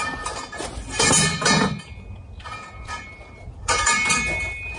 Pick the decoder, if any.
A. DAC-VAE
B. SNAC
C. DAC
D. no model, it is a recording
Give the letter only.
D